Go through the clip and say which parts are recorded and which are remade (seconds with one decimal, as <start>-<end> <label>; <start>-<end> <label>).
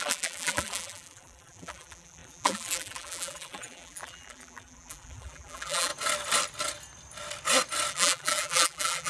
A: 0.0-5.9 remade; 5.9-7.9 recorded; 7.9-9.1 remade